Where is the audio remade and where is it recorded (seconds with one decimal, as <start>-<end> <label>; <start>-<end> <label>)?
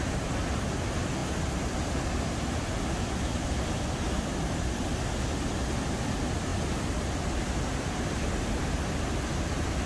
0.0-9.9 recorded